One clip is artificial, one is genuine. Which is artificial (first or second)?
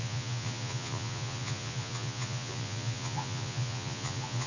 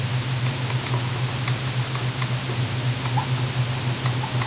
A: first